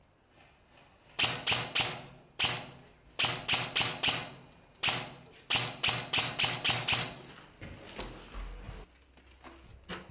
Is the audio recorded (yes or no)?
yes